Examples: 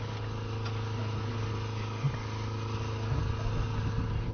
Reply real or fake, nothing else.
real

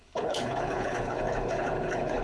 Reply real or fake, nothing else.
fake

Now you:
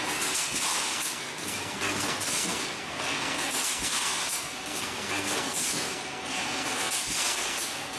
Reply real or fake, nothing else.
fake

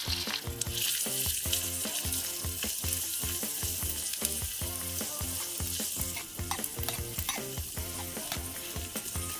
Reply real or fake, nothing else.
real